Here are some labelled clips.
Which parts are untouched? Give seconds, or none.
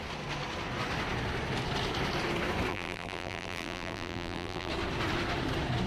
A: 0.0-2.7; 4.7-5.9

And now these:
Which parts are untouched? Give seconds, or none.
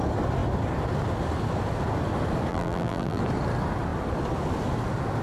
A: 0.0-2.5; 3.2-5.2